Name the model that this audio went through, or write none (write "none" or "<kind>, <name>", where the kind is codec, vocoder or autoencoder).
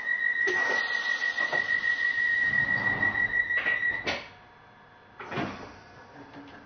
none